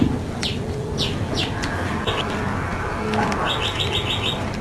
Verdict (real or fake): real